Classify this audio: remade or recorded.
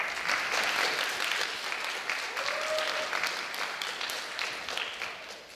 recorded